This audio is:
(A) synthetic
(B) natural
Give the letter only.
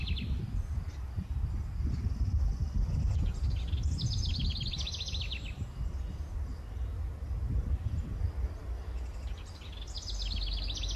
B